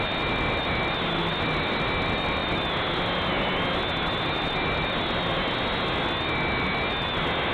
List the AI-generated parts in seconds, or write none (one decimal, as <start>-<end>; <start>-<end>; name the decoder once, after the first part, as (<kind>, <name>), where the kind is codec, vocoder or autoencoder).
none